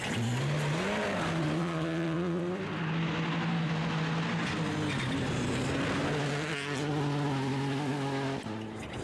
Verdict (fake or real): real